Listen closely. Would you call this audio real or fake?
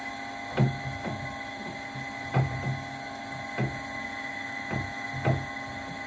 real